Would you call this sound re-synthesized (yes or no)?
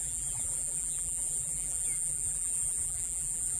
yes